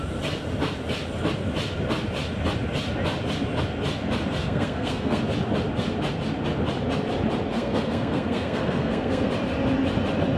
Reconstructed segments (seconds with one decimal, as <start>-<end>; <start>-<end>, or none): 4.4-5.2; 7.5-9.3